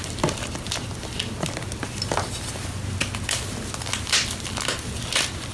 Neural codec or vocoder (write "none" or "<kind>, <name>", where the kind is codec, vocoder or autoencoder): none